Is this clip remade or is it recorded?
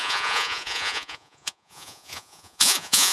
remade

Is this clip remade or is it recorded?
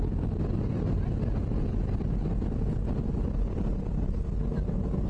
recorded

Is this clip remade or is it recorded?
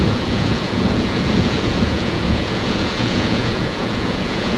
remade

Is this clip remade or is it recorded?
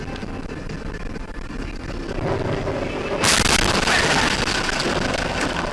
recorded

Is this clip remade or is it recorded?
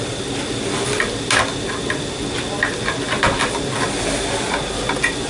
recorded